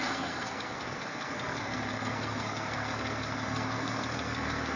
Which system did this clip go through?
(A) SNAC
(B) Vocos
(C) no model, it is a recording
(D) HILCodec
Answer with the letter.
A